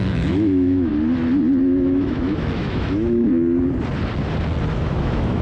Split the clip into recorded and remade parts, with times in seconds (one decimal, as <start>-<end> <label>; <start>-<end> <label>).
0.0-0.9 remade; 0.9-1.6 recorded; 1.6-3.3 remade; 3.3-4.7 recorded; 4.7-5.4 remade